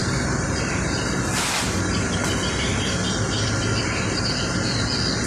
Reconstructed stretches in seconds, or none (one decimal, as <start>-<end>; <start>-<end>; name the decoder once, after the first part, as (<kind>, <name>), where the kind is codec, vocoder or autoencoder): none